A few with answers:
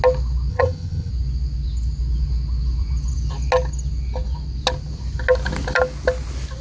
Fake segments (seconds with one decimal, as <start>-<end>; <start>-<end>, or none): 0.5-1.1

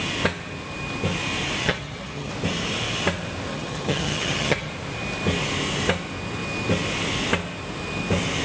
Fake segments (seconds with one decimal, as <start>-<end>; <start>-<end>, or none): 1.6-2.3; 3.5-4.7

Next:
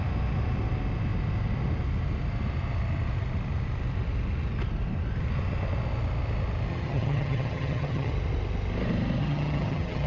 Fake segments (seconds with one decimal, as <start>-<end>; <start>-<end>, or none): 6.7-8.1; 9.2-10.1